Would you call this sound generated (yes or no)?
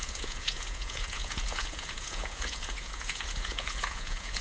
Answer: yes